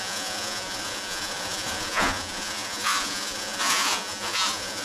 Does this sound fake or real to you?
fake